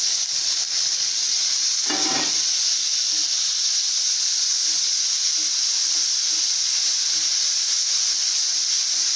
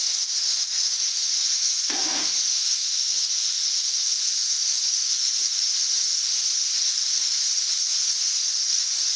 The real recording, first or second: first